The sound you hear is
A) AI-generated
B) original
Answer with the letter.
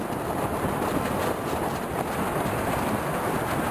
B